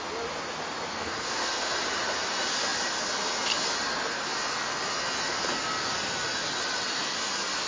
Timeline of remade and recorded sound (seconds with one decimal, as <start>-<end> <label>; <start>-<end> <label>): 0.0-0.9 recorded; 0.9-1.7 remade; 1.7-7.7 recorded